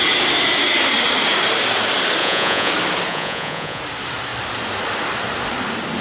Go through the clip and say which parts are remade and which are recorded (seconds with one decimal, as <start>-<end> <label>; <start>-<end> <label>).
0.0-2.2 recorded; 2.2-2.7 remade; 2.7-3.1 recorded; 3.1-3.8 remade; 3.8-6.0 recorded